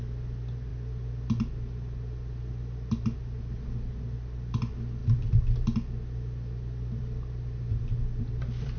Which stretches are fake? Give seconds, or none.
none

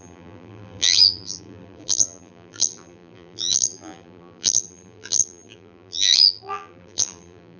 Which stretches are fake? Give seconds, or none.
0.0-7.6 (vocoder, BigVGAN v2)

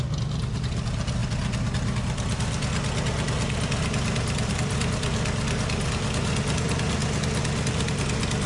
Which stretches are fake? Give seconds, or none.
none

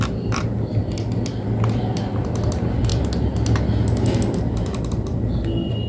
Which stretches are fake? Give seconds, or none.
none

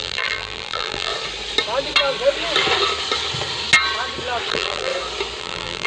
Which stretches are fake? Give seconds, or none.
0.0-1.1 (vocoder, BigVGAN v2); 4.5-4.9; 5.4-5.9

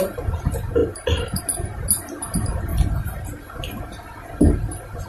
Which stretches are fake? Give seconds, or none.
0.8-1.4 (vocoder, BigVGAN v2); 2.7-3.2

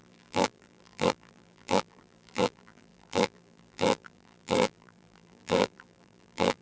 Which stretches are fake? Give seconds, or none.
0.0-6.6 (vocoder, BigVGAN v2)

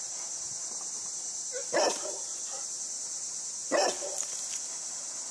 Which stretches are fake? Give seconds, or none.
none